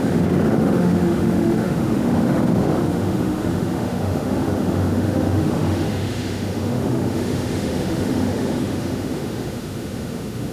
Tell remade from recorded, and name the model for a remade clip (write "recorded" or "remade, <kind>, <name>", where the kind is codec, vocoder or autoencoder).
remade, autoencoder, DAC-VAE